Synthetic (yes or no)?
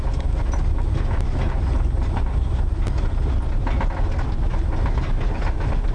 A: no